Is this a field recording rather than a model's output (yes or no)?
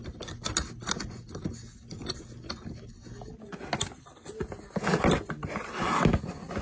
yes